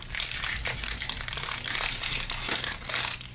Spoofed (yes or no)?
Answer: no